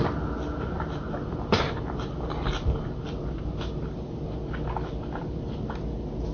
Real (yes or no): yes